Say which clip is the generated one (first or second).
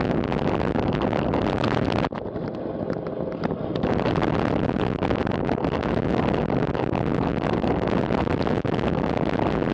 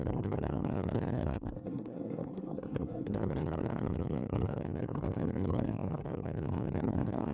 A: second